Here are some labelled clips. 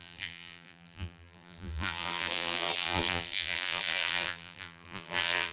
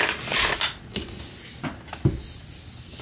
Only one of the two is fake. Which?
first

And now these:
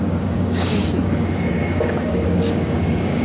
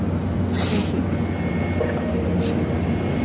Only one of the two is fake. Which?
first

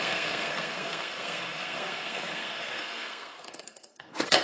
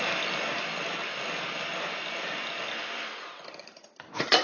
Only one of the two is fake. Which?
first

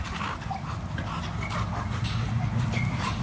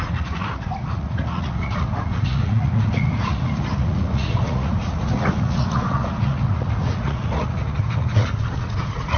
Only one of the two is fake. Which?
second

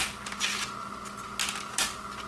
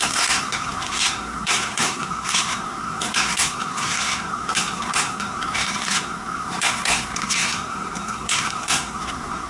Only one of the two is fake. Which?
second